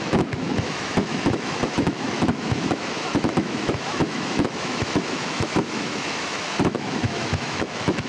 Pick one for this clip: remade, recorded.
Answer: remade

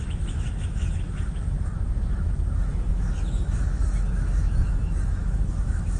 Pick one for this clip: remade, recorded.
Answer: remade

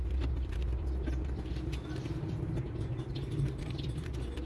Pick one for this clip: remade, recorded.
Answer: remade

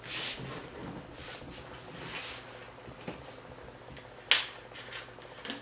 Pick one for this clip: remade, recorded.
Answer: recorded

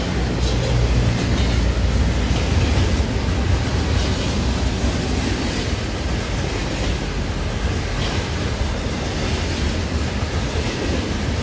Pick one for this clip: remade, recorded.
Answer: recorded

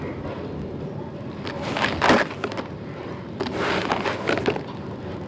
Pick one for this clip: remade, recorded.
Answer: recorded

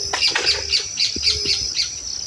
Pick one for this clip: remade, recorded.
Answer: recorded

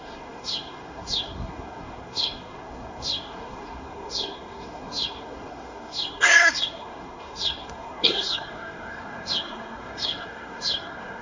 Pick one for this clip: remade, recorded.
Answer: remade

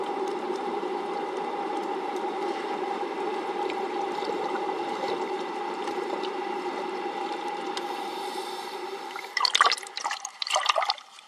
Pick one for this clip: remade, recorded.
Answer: remade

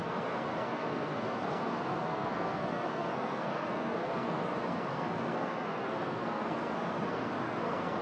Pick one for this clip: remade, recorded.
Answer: remade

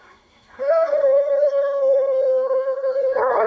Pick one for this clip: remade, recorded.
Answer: remade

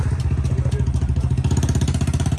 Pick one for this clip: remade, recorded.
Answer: remade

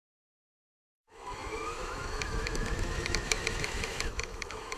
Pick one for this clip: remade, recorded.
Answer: remade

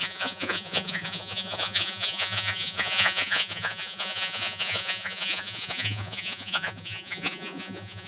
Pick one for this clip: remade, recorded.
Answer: remade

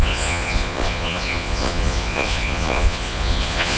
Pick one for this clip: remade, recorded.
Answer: remade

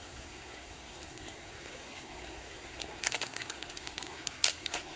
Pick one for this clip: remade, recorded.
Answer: remade